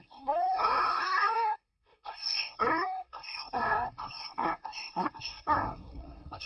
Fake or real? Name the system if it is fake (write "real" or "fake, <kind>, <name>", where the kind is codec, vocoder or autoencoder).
fake, codec, SNAC